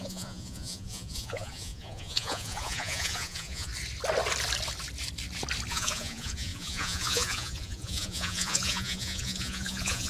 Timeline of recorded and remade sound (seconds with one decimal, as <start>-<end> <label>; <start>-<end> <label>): 0.0-3.7 remade; 3.7-5.7 recorded; 5.7-10.1 remade